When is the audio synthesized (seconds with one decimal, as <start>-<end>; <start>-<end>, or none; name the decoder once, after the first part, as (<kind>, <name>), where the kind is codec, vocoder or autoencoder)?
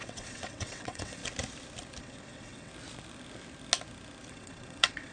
0.0-1.2 (vocoder, WaveNeXt); 2.0-2.7; 4.3-5.1